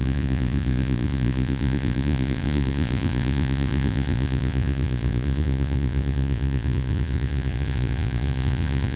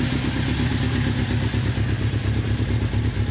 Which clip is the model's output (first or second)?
first